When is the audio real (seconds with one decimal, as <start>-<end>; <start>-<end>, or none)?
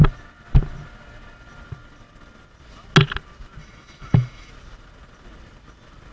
0.0-3.6; 4.5-6.1